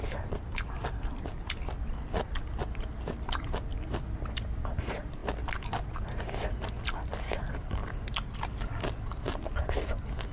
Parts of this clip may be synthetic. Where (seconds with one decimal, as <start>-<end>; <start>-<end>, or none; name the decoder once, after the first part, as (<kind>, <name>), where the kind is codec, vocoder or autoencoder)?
0.0-7.8 (vocoder, BigVGAN v2); 8.4-10.3